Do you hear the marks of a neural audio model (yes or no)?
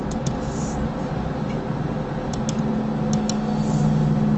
no